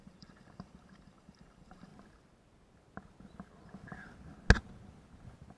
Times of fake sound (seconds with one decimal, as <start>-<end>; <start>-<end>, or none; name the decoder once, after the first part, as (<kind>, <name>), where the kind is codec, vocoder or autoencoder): 0.0-1.9 (vocoder, BigVGAN v2)